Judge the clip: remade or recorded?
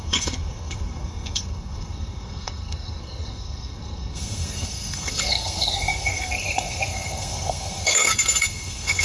remade